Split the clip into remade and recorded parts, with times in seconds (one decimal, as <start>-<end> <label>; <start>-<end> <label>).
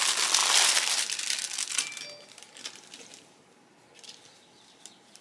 0.0-5.2 recorded